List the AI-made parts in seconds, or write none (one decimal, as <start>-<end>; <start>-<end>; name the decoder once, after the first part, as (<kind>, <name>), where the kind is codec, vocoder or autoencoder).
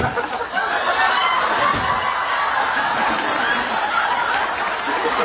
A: none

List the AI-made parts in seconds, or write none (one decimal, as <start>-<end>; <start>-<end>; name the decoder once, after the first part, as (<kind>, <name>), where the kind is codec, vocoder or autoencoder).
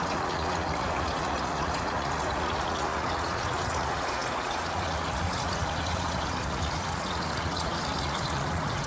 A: 0.0-8.9 (vocoder, Vocos)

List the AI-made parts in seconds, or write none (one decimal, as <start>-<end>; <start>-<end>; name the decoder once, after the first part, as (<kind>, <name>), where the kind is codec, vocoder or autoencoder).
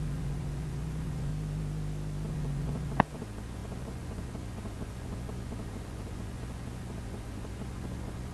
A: 0.0-1.3 (vocoder, Vocos); 2.3-8.3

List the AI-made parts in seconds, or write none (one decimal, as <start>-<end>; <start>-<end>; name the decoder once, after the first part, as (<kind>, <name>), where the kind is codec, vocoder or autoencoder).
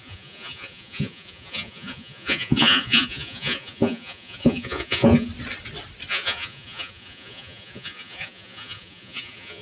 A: 0.0-5.3 (vocoder, Vocos); 6.1-9.6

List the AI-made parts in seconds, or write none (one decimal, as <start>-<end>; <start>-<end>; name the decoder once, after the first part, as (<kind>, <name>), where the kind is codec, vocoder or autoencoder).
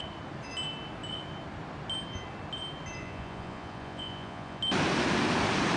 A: 3.0-4.6 (vocoder, Vocos)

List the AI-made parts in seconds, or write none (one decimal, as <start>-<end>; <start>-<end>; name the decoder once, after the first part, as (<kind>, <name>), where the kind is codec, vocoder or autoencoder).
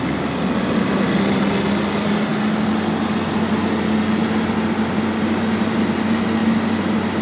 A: none